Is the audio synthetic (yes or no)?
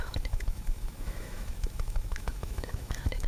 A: yes